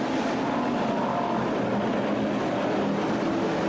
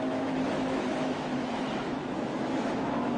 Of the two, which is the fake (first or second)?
second